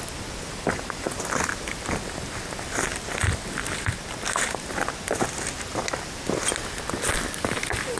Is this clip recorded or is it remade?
recorded